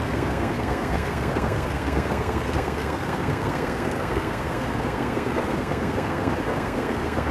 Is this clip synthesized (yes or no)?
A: yes